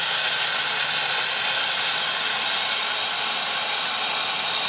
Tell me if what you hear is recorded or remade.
recorded